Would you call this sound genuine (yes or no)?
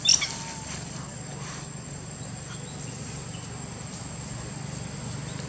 yes